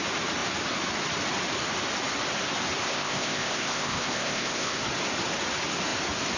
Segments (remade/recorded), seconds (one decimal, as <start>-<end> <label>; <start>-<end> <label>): 0.0-2.8 recorded; 2.8-4.8 remade; 4.8-6.4 recorded